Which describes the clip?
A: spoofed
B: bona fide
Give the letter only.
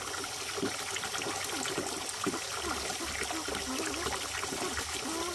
B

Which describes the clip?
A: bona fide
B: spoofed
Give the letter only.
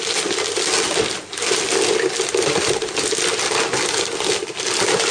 A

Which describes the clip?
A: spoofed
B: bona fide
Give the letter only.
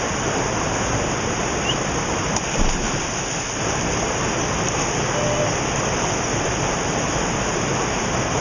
B